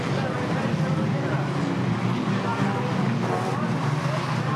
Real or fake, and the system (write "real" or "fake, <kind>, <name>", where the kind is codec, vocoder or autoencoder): real